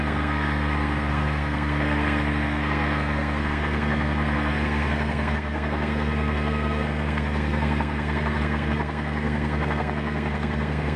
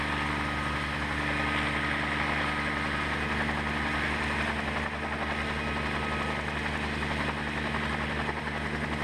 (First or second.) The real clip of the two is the second